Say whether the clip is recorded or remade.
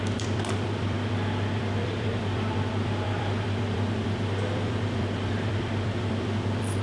remade